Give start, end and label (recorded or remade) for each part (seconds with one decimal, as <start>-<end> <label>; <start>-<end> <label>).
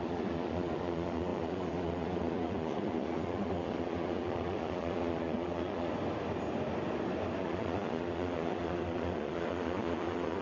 0.0-5.9 remade; 5.9-7.4 recorded; 7.4-10.4 remade